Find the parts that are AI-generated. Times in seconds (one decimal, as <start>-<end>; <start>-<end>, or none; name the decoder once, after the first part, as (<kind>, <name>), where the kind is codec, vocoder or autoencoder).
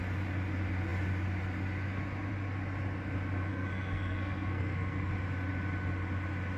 3.5-5.1 (codec, SNAC)